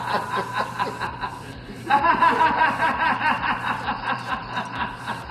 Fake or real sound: fake